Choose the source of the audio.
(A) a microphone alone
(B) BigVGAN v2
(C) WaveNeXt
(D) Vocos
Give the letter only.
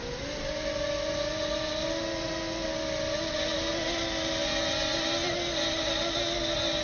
A